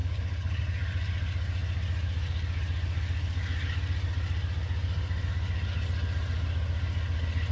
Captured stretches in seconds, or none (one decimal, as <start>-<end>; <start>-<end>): 0.6-7.5